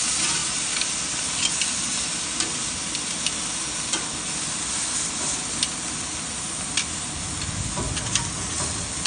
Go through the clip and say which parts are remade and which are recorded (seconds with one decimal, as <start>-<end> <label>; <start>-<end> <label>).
0.0-9.1 recorded

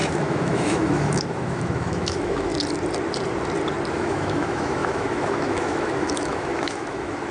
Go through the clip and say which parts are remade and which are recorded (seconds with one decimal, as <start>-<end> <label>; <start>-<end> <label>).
0.0-2.5 remade; 2.5-3.9 recorded; 3.9-7.3 remade